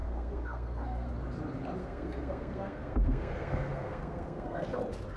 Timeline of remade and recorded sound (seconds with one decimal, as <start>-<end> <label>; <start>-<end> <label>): 0.0-1.1 remade; 1.1-1.8 recorded; 1.8-4.8 remade; 4.8-5.2 recorded